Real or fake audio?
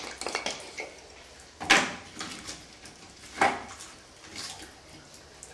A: real